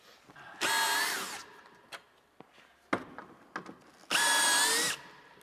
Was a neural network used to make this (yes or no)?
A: no